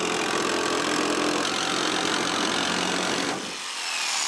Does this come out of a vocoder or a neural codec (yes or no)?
no